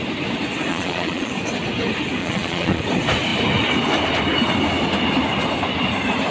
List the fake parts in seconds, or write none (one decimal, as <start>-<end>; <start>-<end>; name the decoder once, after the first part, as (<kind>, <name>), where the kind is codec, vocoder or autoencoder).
0.7-1.3 (vocoder, Vocos); 2.2-2.8

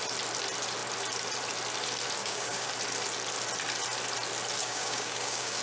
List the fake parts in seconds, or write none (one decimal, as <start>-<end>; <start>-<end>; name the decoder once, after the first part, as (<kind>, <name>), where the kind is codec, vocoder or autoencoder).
2.2-2.7 (codec, DAC); 4.6-5.6

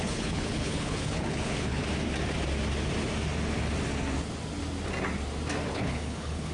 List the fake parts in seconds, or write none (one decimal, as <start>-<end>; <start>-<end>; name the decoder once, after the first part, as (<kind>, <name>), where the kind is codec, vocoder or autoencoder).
0.0-1.8 (codec, HILCodec); 5.7-6.5

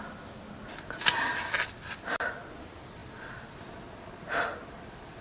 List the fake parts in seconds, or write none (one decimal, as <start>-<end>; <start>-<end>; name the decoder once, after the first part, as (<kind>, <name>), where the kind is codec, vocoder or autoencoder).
none

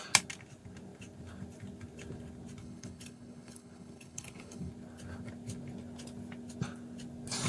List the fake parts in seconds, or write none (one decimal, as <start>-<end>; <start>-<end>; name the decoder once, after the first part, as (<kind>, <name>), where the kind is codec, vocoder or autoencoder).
2.6-4.7 (codec, HILCodec)

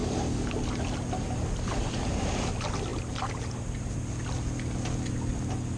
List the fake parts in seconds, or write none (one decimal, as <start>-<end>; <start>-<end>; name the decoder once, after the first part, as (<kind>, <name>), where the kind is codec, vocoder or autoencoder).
0.0-0.5 (codec, DAC)

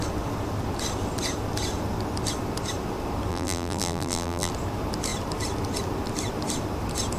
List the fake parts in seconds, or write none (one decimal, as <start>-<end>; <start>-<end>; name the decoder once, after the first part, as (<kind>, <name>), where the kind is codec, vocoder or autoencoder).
3.3-4.5 (vocoder, BigVGAN v2)

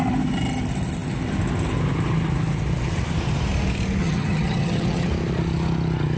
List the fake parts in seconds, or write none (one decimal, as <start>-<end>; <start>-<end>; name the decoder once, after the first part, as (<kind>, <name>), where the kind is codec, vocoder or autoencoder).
4.0-5.1 (vocoder, HiFi-GAN)